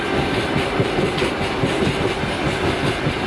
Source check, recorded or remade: recorded